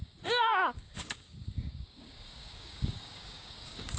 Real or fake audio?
fake